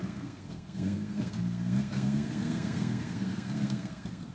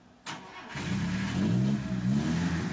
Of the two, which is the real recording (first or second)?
second